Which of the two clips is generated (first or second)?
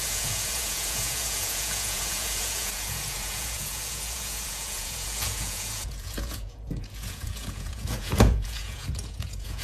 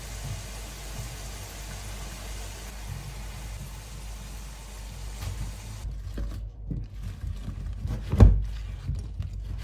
first